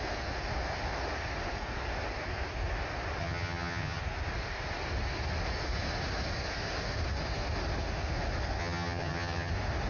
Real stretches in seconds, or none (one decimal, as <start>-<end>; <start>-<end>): 0.0-3.2; 4.0-8.6; 9.5-9.9